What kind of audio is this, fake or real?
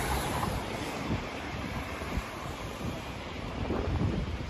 fake